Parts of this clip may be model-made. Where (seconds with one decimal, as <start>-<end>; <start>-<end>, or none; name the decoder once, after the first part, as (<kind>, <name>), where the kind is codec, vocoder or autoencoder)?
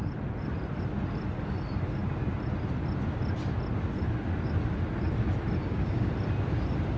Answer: 5.6-6.1 (codec, DAC)